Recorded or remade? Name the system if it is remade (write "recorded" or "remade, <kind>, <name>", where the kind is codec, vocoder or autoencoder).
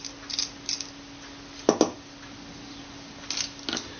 recorded